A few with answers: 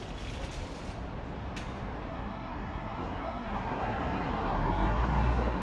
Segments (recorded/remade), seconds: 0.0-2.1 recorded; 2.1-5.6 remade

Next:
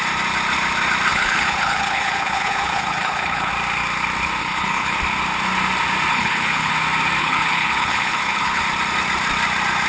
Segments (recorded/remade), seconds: 0.0-1.1 recorded; 1.1-3.5 remade; 3.5-4.4 recorded; 4.4-5.0 remade; 5.0-6.1 recorded; 6.1-6.7 remade; 6.7-7.2 recorded; 7.2-8.6 remade; 8.6-9.9 recorded

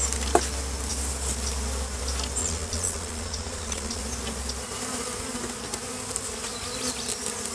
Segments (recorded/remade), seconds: 0.0-2.4 recorded; 2.4-4.0 remade; 4.0-7.5 recorded